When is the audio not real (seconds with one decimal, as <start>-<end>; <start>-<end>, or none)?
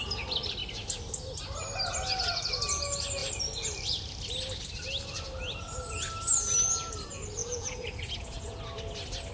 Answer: 7.4-8.6